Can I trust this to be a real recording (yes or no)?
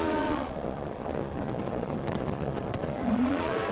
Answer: no